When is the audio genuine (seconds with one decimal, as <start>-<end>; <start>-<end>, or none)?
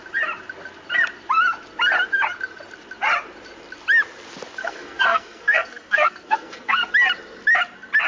0.0-4.6; 6.9-8.1